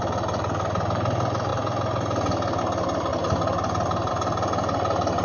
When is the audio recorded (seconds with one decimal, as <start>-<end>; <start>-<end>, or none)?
0.0-5.2